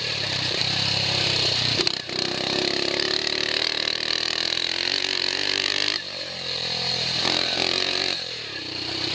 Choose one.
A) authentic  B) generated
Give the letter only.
B